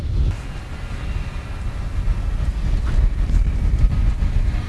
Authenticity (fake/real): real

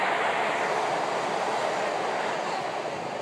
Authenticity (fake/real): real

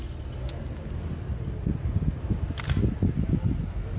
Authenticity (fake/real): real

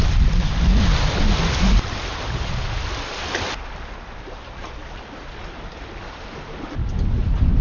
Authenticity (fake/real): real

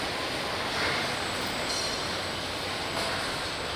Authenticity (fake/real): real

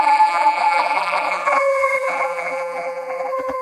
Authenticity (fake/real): fake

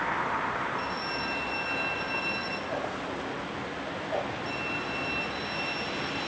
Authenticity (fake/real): real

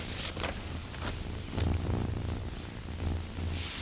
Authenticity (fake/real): real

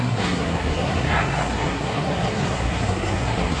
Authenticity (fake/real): fake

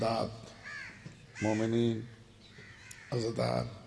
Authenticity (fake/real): real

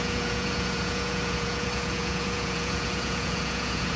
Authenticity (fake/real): fake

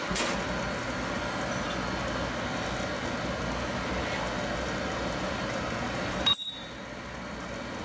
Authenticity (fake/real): real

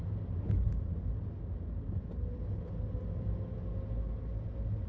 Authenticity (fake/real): real